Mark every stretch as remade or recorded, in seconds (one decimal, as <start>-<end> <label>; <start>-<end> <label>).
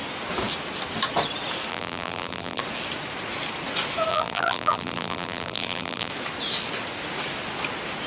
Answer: 0.0-1.7 recorded; 1.7-2.6 remade; 2.6-4.1 recorded; 4.1-6.1 remade; 6.1-8.1 recorded